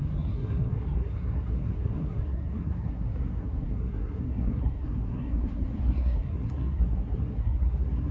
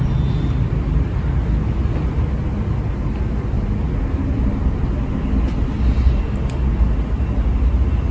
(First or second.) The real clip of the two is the second